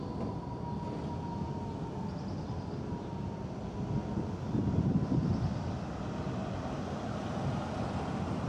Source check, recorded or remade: recorded